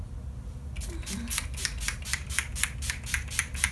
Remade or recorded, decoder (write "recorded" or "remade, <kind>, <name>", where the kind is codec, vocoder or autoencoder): recorded